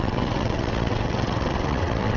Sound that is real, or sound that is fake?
fake